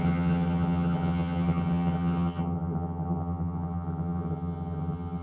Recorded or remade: remade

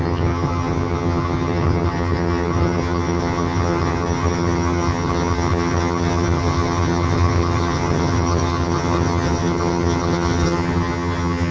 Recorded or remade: remade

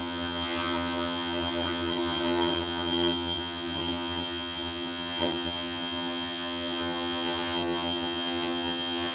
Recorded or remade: remade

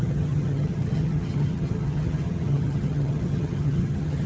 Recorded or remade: remade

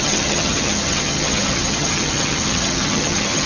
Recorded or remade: remade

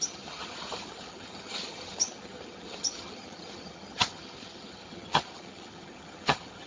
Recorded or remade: remade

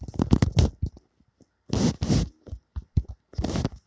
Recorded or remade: recorded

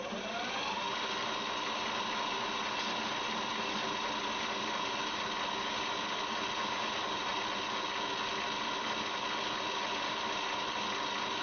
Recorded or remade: recorded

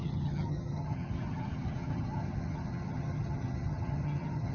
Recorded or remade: remade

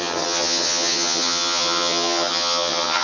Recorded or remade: remade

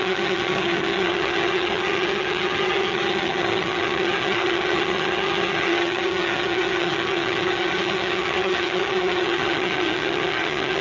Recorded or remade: remade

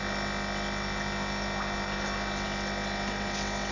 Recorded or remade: recorded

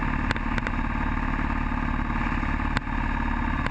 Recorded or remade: recorded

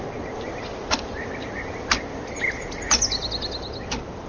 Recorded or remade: recorded